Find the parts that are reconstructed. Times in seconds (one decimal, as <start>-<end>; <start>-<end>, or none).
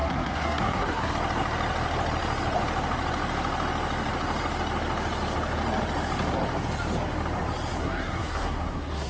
0.0-1.1; 7.8-9.1